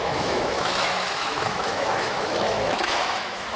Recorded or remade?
remade